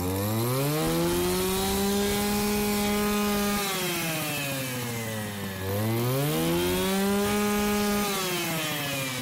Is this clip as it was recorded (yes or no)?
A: yes